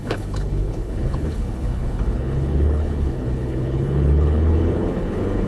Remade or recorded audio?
remade